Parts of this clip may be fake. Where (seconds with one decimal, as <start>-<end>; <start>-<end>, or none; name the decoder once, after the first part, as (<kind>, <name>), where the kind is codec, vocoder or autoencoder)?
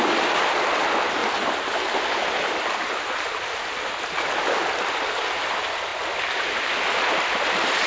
1.2-4.4 (vocoder, BigVGAN v2)